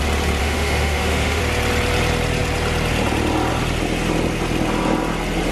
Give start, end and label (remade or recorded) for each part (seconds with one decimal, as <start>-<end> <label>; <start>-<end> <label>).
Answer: 0.0-0.4 recorded; 0.4-1.4 remade; 1.4-5.5 recorded

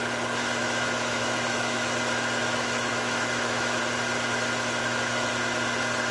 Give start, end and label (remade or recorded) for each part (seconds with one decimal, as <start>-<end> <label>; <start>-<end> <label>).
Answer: 0.0-0.6 recorded; 0.6-2.0 remade; 2.0-2.4 recorded; 2.4-3.8 remade; 3.8-4.8 recorded; 4.8-5.3 remade; 5.3-6.1 recorded

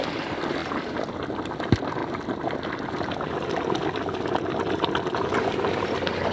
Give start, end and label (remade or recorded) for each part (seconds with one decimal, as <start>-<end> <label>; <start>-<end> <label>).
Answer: 0.0-6.3 recorded

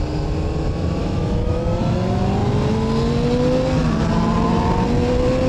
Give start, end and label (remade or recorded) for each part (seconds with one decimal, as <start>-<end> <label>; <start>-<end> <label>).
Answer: 0.0-1.0 recorded; 1.0-1.6 remade; 1.6-5.5 recorded

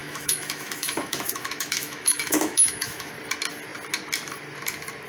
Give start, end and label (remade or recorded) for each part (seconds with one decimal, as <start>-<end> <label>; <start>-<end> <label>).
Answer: 0.0-3.1 remade; 3.1-5.1 recorded

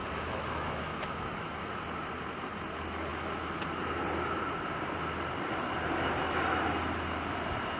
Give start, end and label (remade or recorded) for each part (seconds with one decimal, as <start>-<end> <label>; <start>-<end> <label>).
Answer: 0.0-1.8 remade; 1.8-7.8 recorded